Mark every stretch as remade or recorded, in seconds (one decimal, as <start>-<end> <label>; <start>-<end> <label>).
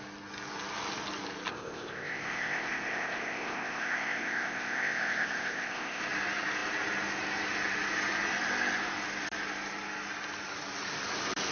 0.0-1.5 recorded; 1.5-6.0 remade; 6.0-11.5 recorded